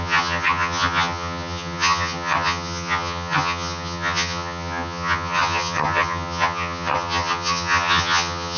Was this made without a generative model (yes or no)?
no